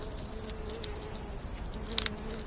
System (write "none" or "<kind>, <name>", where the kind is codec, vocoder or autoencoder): none